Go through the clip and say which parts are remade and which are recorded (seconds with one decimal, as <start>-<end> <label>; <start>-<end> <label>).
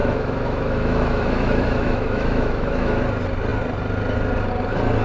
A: 0.0-3.0 remade; 3.0-5.0 recorded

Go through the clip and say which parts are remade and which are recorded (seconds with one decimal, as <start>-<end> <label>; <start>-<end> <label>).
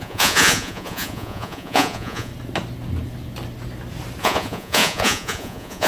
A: 0.0-2.3 remade; 2.3-4.2 recorded; 4.2-5.9 remade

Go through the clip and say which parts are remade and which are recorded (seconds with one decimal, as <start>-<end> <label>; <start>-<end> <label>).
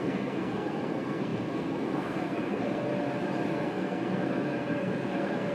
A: 0.0-2.9 remade; 2.9-3.5 recorded; 3.5-5.5 remade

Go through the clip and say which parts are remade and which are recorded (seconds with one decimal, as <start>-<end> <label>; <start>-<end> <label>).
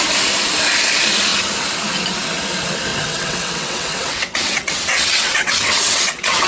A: 0.0-2.9 recorded; 2.9-6.5 remade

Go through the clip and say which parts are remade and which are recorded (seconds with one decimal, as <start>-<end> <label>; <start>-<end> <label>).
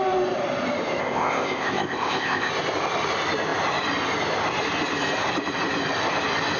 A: 0.0-1.0 recorded; 1.0-2.5 remade; 2.5-6.6 recorded